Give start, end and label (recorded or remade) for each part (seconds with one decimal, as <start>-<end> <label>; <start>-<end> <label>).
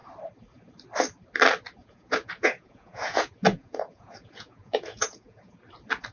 0.0-1.8 recorded; 1.8-5.5 remade; 5.5-6.1 recorded